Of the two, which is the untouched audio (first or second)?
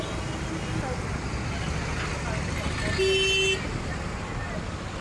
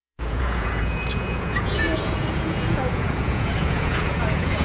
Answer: first